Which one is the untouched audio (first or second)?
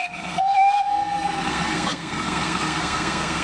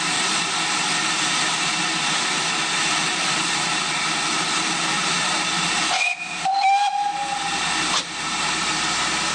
second